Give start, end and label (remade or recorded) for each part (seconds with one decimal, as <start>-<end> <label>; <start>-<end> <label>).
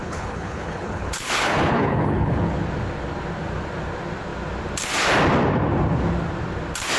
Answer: 0.0-2.5 remade; 2.5-7.0 recorded